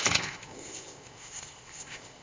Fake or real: fake